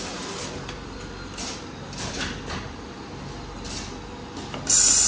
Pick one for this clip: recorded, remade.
recorded